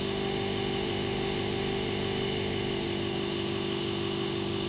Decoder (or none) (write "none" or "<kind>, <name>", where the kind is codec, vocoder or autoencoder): autoencoder, DAC-VAE